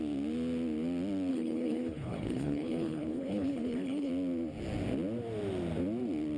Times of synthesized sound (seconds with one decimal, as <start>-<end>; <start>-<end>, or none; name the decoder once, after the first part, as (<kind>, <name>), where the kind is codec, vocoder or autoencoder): 1.3-4.1 (codec, HILCodec)